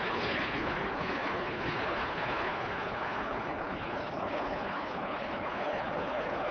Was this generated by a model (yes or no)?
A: yes